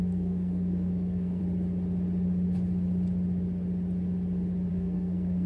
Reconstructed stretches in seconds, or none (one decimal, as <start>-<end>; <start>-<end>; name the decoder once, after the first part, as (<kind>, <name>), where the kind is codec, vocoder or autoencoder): 0.0-1.4 (codec, SNAC); 4.7-5.5